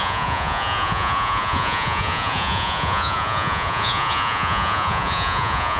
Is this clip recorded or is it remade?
remade